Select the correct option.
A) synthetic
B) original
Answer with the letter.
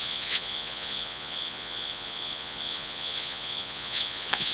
A